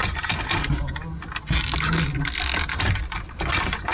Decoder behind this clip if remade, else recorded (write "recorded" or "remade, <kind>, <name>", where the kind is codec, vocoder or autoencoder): recorded